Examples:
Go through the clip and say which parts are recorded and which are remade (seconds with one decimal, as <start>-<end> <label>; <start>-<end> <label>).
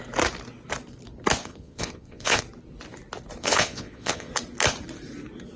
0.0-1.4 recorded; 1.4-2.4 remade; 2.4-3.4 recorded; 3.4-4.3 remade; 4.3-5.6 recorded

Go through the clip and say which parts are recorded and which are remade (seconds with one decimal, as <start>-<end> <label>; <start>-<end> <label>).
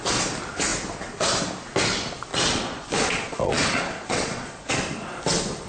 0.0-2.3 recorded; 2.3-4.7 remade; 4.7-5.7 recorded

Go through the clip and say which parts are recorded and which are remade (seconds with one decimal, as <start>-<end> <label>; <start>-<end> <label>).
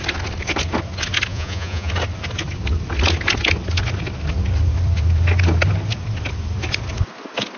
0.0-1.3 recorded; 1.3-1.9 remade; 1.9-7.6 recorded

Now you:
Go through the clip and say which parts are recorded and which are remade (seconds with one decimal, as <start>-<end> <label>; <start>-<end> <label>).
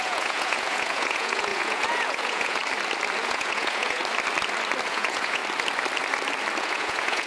0.0-2.6 remade; 2.6-3.2 recorded; 3.2-4.0 remade; 4.0-4.9 recorded; 4.9-5.4 remade; 5.4-6.6 recorded; 6.6-7.3 remade